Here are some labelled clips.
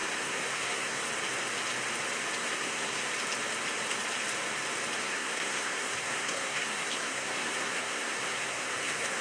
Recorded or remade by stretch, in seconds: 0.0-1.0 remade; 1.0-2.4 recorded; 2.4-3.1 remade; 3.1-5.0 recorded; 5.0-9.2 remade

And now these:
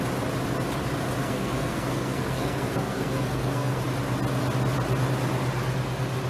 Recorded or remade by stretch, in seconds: 0.0-1.2 recorded; 1.2-3.8 remade; 3.8-6.3 recorded

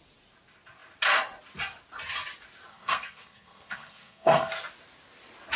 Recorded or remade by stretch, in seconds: 0.0-2.7 recorded; 2.7-4.5 remade; 4.5-5.6 recorded

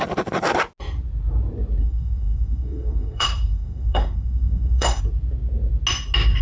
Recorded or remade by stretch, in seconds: 0.0-1.8 recorded; 1.8-5.0 remade; 5.0-6.4 recorded

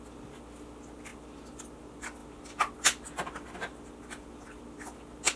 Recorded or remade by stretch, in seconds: 0.0-5.4 recorded

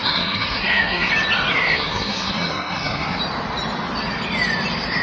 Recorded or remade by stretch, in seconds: 0.0-1.1 remade; 1.1-1.5 recorded; 1.5-3.2 remade; 3.2-5.0 recorded